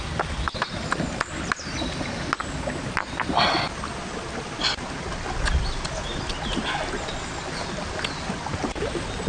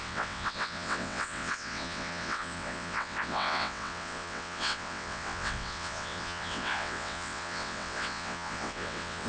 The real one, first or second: first